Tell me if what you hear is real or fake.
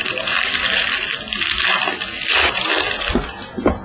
real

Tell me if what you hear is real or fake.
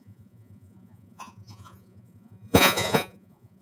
fake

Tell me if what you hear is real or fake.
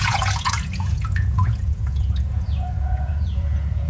fake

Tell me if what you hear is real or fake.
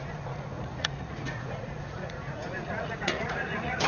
fake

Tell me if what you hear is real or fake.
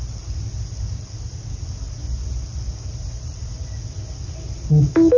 real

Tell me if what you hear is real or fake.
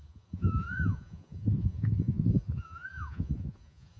fake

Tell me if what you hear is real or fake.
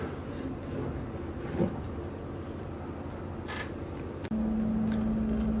real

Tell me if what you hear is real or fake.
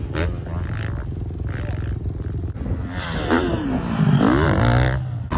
real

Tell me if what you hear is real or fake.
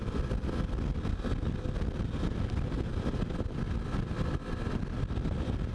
real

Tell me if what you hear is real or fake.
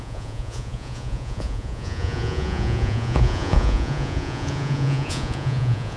fake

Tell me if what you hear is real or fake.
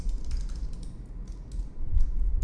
real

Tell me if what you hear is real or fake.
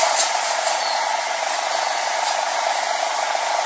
fake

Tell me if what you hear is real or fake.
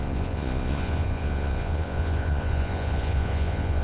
fake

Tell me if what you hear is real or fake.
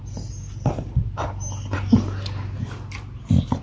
real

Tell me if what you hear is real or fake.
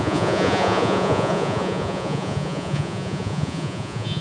fake